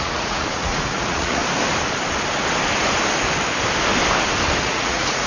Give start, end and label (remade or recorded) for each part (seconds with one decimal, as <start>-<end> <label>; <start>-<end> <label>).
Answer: 0.0-1.4 remade; 1.4-4.6 recorded; 4.6-5.3 remade

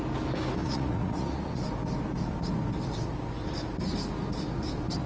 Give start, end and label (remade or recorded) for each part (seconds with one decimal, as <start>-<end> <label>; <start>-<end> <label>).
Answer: 0.0-0.6 recorded; 0.6-1.6 remade; 1.6-5.1 recorded